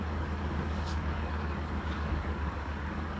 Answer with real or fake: fake